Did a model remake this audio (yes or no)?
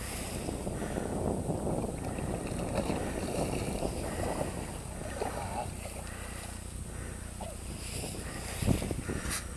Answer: no